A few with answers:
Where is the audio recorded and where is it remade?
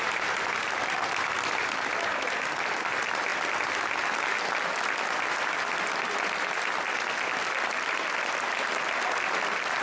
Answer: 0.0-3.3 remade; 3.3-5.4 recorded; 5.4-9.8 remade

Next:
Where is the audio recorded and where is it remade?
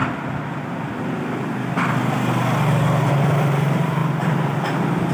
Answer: 0.0-3.1 recorded; 3.1-4.0 remade; 4.0-5.1 recorded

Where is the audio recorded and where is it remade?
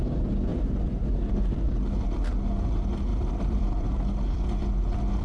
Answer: 0.0-0.5 recorded; 0.5-1.7 remade; 1.7-3.1 recorded; 3.1-3.6 remade; 3.6-5.2 recorded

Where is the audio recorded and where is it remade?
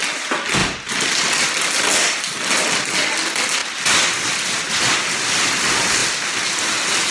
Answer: 0.0-7.1 recorded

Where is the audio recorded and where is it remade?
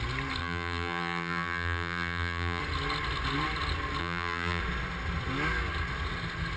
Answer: 0.0-0.4 recorded; 0.4-2.6 remade; 2.6-4.0 recorded; 4.0-4.6 remade; 4.6-6.6 recorded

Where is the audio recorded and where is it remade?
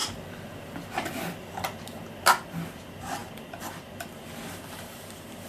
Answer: 0.0-2.3 recorded; 2.3-5.5 remade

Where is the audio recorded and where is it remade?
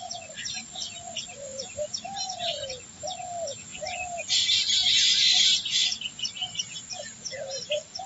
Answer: 0.0-6.4 remade; 6.4-6.9 recorded; 6.9-8.1 remade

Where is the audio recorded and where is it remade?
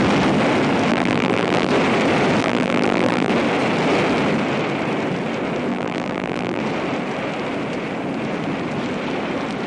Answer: 0.0-0.9 recorded; 0.9-1.7 remade; 1.7-2.4 recorded; 2.4-3.3 remade; 3.3-5.7 recorded; 5.7-6.6 remade; 6.6-9.7 recorded